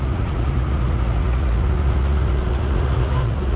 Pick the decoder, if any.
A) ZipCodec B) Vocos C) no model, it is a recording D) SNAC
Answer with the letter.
B